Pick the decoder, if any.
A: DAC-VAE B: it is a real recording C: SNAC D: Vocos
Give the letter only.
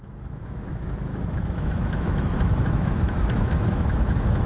A